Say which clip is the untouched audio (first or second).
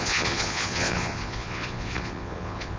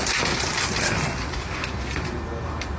second